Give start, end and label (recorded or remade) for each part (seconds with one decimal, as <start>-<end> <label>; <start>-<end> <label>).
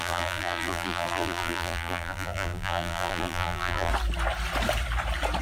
0.0-3.9 remade; 3.9-5.4 recorded